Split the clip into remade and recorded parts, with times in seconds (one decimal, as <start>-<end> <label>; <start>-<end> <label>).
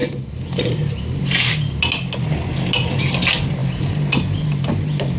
0.0-5.2 recorded